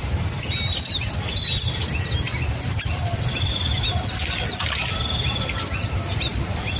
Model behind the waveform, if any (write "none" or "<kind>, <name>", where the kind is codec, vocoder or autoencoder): none